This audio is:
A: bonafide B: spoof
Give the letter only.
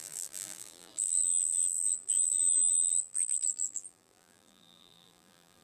B